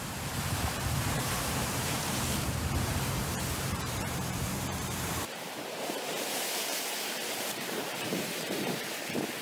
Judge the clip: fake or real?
fake